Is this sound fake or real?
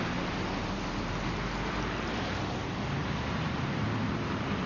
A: real